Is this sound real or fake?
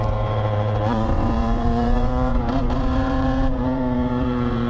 fake